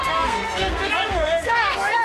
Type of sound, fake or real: fake